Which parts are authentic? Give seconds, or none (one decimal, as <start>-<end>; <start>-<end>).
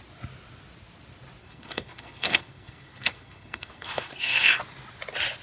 0.0-1.4; 4.6-5.4